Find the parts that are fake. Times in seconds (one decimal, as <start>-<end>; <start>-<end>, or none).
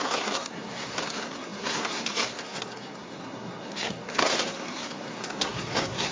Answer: 0.0-6.1